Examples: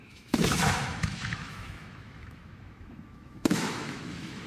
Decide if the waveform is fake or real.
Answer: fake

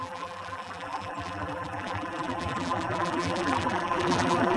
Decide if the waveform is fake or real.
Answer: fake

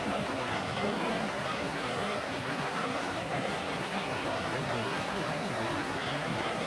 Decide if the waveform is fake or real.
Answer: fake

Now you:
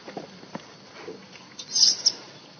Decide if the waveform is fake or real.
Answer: real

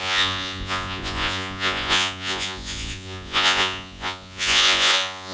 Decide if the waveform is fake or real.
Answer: fake